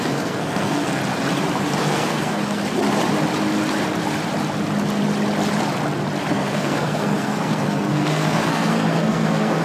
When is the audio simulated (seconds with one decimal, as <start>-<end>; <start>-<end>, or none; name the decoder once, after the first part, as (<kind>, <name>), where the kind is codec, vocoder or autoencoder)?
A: 0.0-1.0 (codec, SNAC); 1.8-2.6; 6.3-9.6